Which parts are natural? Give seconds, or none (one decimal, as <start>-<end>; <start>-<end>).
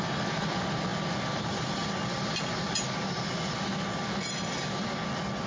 0.0-5.5